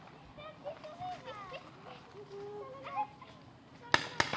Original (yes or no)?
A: yes